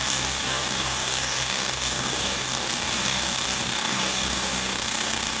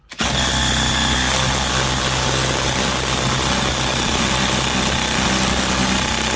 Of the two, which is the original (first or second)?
second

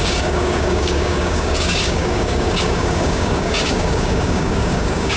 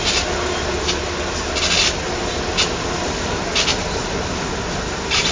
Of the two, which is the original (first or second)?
second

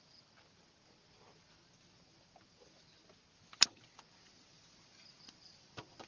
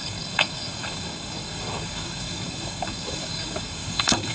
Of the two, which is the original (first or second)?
first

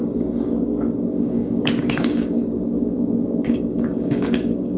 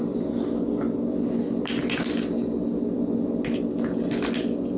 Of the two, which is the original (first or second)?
second